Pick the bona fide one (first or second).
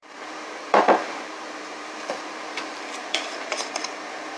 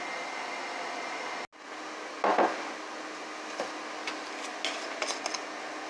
second